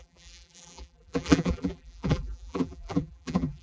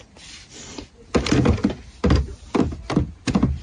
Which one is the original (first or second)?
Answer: second